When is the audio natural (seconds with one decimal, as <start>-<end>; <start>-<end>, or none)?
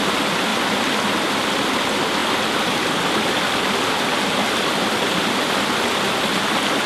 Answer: 0.0-6.9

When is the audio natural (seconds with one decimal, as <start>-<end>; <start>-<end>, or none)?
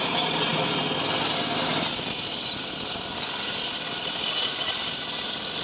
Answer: 0.0-5.6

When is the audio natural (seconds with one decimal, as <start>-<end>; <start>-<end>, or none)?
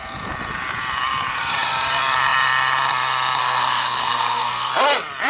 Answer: 0.0-3.4; 4.7-5.3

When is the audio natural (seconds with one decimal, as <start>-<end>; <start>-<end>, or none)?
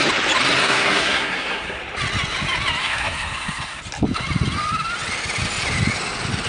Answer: 0.0-0.6; 1.8-2.8; 3.8-6.5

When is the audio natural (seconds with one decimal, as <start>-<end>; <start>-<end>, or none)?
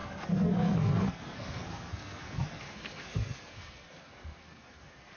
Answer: none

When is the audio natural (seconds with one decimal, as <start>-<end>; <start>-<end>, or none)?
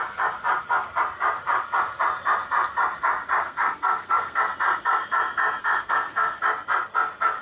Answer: 0.0-3.4; 4.4-5.6; 6.4-7.4